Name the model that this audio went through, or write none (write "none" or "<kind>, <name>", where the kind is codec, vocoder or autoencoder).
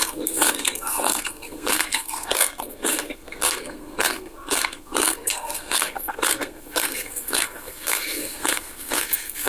codec, SNAC